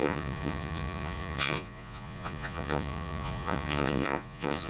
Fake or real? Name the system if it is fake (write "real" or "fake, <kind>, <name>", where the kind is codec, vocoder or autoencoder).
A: fake, vocoder, Vocos